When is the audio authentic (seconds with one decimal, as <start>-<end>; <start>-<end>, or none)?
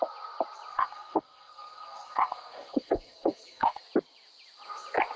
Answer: 0.0-0.7; 3.8-5.2